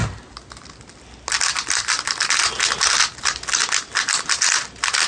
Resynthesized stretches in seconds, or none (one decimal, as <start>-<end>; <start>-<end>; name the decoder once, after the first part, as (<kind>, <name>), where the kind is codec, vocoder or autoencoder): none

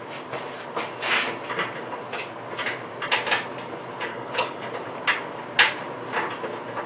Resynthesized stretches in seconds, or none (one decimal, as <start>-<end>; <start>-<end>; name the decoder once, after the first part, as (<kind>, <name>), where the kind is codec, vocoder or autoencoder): 4.1-4.7 (codec, HILCodec)

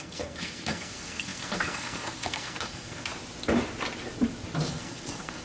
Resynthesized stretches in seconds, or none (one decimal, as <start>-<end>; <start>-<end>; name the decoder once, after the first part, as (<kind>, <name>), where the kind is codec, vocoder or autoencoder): 0.0-3.1 (codec, SNAC); 4.7-5.4

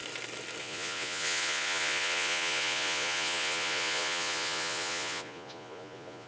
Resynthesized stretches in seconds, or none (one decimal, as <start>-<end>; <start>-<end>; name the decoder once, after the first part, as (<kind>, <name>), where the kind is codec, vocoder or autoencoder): 0.6-6.3 (vocoder, Vocos)

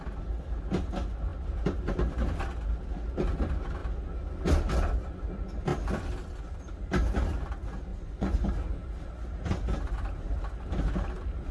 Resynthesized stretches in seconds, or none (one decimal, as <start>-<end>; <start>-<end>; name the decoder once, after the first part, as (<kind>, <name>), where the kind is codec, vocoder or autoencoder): 7.9-8.5 (vocoder, Vocos)